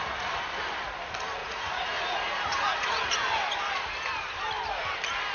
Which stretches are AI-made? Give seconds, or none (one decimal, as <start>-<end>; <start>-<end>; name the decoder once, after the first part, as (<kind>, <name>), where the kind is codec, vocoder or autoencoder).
1.4-3.1 (vocoder, Vocos)